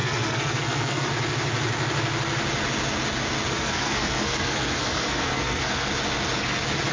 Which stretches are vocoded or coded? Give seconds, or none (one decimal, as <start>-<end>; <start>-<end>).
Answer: 0.0-1.1; 3.5-5.9